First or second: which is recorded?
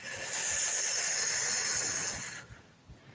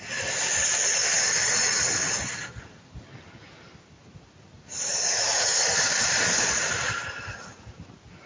first